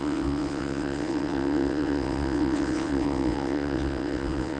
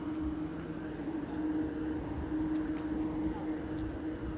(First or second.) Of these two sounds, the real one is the second